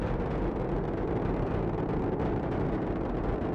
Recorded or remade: remade